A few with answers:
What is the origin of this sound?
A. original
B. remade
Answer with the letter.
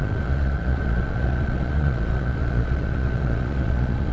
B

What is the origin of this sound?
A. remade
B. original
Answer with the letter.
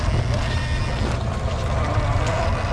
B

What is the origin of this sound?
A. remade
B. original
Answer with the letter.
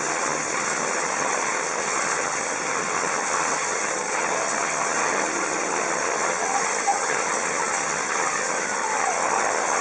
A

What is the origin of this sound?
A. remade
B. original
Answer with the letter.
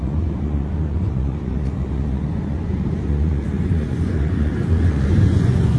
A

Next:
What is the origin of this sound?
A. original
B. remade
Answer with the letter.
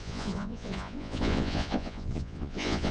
B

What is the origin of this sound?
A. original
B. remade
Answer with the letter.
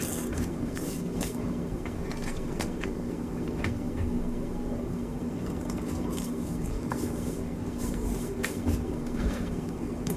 B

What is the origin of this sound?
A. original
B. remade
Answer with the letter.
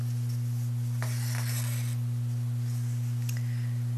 A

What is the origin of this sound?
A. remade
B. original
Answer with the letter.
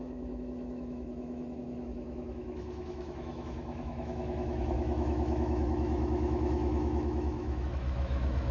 A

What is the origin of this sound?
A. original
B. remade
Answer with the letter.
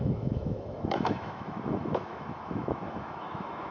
B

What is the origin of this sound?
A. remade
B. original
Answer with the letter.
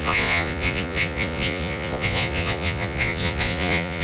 A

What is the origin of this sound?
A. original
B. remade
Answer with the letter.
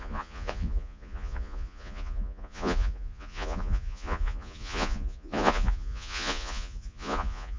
B